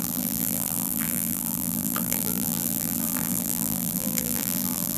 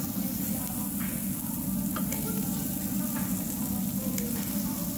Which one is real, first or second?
second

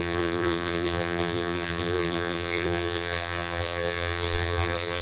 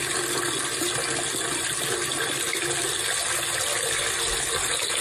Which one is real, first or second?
second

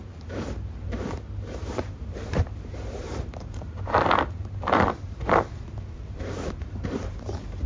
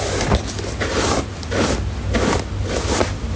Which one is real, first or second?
second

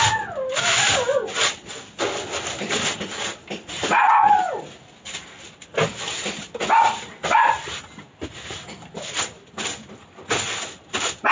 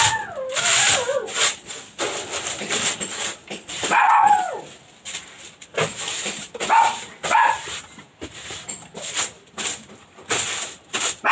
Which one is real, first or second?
first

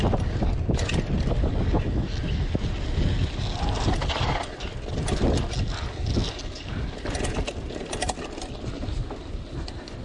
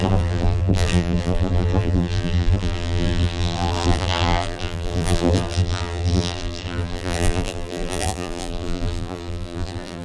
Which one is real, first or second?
first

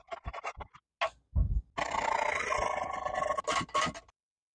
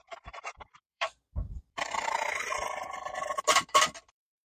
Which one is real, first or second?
first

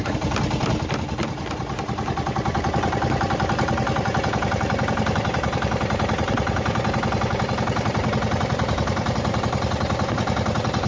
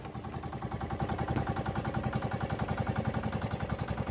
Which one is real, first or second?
second